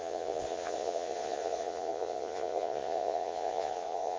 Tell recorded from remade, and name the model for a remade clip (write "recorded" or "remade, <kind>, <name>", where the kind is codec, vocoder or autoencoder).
remade, vocoder, Vocos